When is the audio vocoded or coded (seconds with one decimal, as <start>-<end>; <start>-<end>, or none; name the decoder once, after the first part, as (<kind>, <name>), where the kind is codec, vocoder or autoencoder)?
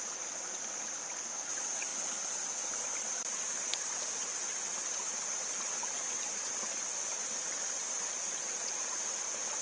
none